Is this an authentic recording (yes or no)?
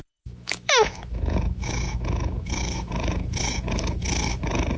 no